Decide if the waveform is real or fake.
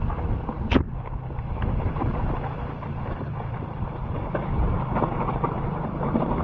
fake